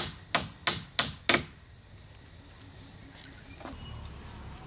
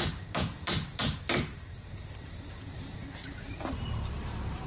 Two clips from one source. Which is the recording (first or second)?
first